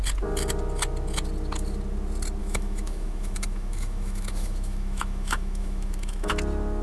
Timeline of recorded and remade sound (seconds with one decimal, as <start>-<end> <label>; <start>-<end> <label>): 0.0-2.4 recorded; 2.4-6.3 remade; 6.3-6.8 recorded